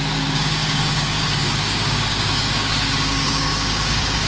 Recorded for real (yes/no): no